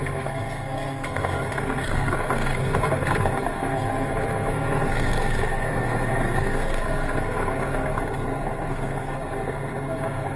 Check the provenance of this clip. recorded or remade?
remade